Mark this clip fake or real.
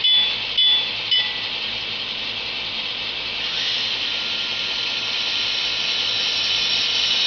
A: real